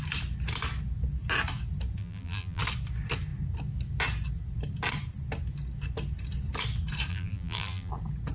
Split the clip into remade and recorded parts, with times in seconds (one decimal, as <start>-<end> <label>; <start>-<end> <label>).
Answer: 0.0-2.0 recorded; 2.0-2.6 remade; 2.6-7.1 recorded; 7.1-7.9 remade; 7.9-8.3 recorded